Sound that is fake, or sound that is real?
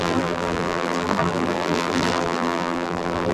fake